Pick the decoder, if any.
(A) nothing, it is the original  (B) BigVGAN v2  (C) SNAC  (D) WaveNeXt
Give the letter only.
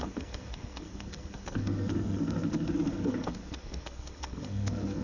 C